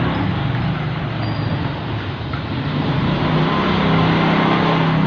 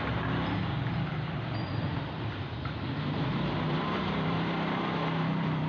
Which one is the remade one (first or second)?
second